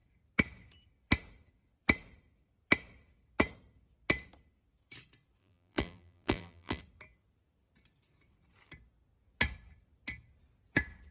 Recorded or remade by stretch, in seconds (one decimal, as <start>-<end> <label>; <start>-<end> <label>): 0.0-5.4 recorded; 5.4-6.8 remade; 6.8-11.1 recorded